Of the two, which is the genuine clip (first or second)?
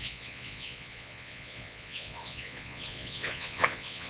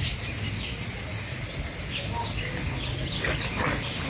second